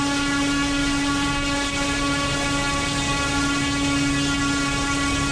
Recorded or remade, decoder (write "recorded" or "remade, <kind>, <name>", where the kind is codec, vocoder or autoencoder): recorded